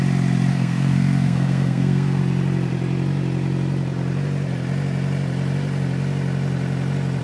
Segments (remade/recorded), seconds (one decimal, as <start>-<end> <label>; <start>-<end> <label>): 0.0-0.5 recorded; 0.5-2.2 remade; 2.2-7.2 recorded